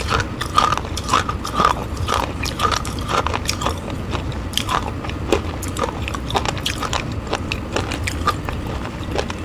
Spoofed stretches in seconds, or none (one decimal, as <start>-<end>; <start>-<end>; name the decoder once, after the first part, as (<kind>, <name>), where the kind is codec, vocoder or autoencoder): 1.8-3.2 (vocoder, BigVGAN v2)